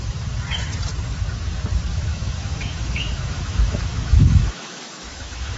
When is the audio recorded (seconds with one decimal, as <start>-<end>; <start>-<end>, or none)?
0.0-1.9